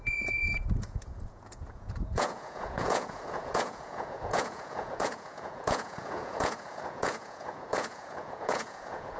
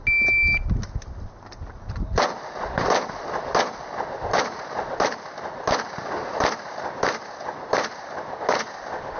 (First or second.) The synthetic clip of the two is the first